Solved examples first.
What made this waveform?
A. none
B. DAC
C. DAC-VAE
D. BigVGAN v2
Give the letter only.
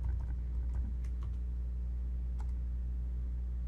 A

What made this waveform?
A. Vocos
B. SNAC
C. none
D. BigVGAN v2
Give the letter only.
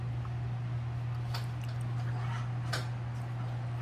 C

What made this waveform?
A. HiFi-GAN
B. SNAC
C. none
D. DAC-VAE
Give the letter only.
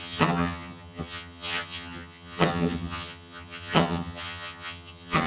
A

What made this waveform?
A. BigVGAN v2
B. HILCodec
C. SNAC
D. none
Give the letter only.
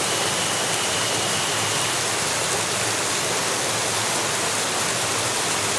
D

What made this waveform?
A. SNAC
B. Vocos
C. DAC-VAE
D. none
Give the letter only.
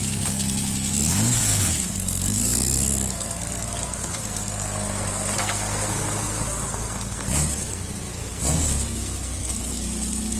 A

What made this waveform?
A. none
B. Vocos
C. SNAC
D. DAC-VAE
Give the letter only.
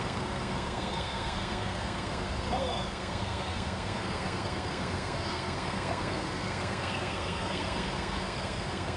C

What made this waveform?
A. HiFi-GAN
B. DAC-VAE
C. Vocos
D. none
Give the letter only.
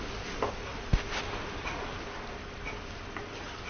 D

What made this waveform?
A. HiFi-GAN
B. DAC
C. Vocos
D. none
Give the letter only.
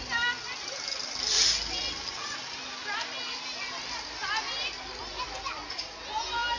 D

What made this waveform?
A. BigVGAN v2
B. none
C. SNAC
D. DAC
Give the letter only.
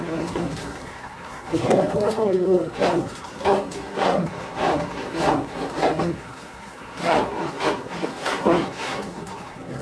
C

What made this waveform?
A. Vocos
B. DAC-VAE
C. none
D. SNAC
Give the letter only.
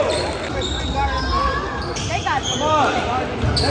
C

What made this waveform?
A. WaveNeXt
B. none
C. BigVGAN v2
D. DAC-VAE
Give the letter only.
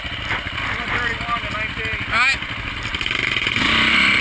B